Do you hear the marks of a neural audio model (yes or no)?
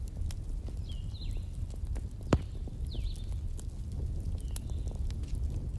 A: no